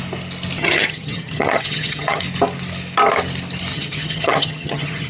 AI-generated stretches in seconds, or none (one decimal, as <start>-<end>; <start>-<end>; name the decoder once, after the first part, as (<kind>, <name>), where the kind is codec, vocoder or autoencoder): 0.6-2.2 (vocoder, HiFi-GAN); 3.7-5.1